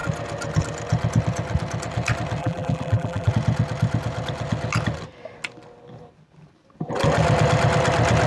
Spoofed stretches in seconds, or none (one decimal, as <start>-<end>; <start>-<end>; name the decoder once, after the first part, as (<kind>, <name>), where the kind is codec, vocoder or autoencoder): 2.4-3.3 (vocoder, BigVGAN v2)